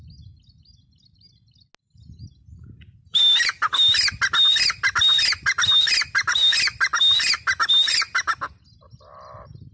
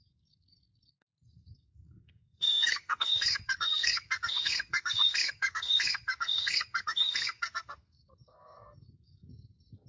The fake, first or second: second